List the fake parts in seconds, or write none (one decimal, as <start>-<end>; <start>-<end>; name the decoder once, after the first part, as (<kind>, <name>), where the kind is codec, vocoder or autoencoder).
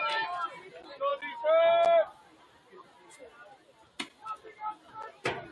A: none